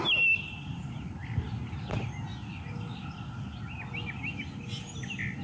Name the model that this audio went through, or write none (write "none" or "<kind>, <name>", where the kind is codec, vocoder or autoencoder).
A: none